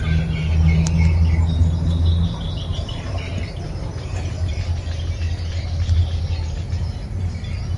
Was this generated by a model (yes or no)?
no